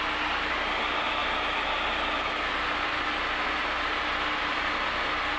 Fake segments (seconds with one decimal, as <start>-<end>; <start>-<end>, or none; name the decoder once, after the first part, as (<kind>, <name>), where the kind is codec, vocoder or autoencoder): none